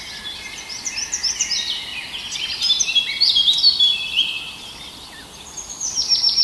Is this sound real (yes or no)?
yes